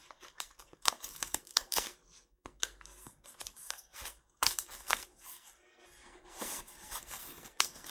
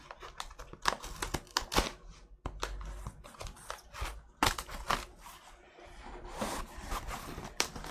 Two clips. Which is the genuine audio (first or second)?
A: second